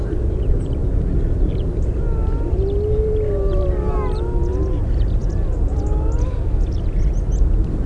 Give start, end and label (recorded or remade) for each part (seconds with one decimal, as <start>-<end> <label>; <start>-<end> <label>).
0.0-7.9 recorded